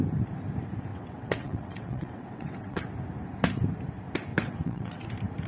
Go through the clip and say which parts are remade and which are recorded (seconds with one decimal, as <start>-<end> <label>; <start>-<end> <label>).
0.0-0.9 recorded; 0.9-2.8 remade; 2.8-4.3 recorded; 4.3-5.0 remade; 5.0-5.5 recorded